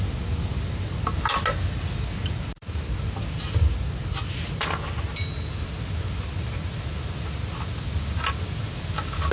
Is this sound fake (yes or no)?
no